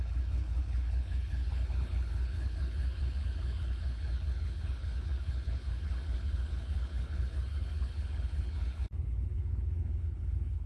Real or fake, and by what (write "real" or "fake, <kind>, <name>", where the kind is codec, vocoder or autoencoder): fake, codec, HILCodec